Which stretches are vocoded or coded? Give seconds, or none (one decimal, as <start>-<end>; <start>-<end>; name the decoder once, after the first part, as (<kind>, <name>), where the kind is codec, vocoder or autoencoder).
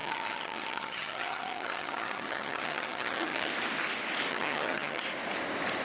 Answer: 0.0-3.5 (vocoder, HiFi-GAN); 4.3-5.0